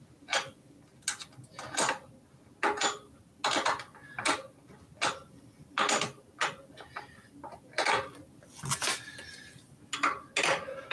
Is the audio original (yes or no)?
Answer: yes